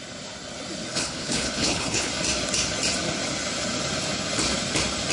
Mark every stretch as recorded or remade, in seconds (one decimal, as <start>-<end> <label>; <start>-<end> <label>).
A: 0.0-0.9 recorded; 0.9-2.1 remade; 2.1-5.1 recorded